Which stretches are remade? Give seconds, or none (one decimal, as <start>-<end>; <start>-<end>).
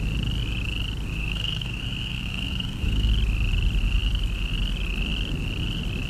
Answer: 1.2-3.1